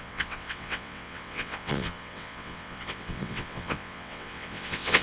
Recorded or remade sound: remade